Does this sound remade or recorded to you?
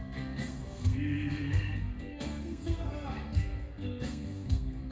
remade